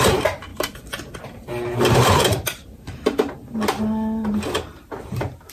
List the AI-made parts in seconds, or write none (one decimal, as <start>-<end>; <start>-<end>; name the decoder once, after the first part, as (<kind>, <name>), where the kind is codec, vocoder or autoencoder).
0.5-3.8 (vocoder, BigVGAN v2)